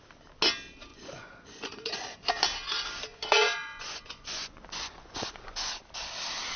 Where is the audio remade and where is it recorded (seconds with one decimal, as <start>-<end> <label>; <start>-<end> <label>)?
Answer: 0.0-0.9 recorded; 0.9-2.3 remade; 2.3-3.1 recorded; 3.1-5.7 remade; 5.7-6.6 recorded